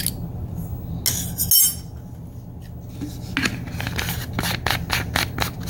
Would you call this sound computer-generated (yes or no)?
no